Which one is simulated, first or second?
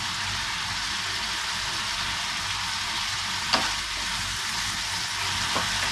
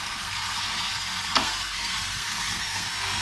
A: second